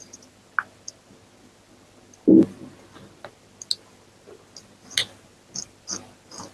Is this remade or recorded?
recorded